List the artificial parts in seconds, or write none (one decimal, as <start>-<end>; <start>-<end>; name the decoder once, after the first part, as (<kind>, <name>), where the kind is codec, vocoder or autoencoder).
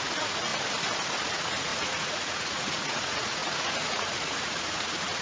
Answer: 0.0-0.5 (vocoder, Vocos); 1.2-5.2